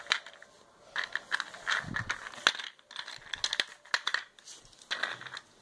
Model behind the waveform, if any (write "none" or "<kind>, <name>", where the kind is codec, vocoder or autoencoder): none